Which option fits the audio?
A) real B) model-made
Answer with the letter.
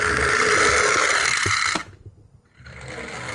A